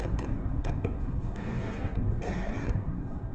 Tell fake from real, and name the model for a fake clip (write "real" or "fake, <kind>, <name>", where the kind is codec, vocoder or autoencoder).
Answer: fake, codec, SNAC